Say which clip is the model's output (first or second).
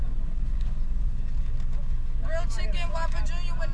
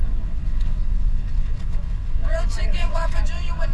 second